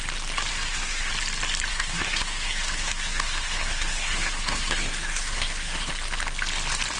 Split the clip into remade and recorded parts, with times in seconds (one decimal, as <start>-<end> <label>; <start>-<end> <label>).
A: 0.0-0.5 recorded; 0.5-1.1 remade; 1.1-1.7 recorded; 1.7-5.9 remade; 5.9-7.0 recorded